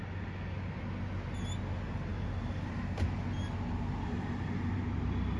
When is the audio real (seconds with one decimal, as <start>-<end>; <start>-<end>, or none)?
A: 0.0-5.4